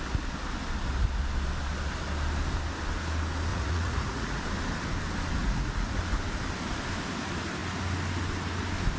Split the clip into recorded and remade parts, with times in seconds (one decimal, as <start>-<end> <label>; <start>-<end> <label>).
0.0-3.5 recorded; 3.5-4.4 remade; 4.4-5.4 recorded; 5.4-6.0 remade; 6.0-9.0 recorded